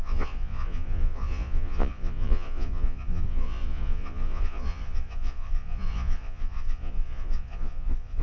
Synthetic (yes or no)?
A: yes